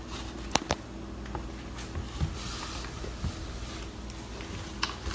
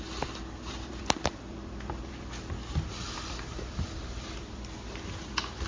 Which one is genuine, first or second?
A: first